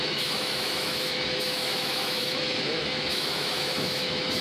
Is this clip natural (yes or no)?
no